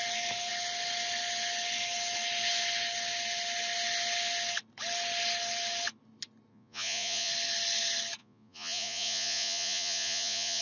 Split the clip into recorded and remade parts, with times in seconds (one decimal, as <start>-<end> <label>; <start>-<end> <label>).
0.0-6.5 recorded; 6.5-7.3 remade; 7.3-8.2 recorded; 8.2-10.6 remade